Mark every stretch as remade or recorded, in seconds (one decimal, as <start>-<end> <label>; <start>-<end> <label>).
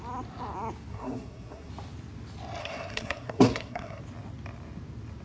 0.0-0.9 recorded; 0.9-1.7 remade; 1.7-2.6 recorded; 2.6-4.0 remade; 4.0-5.2 recorded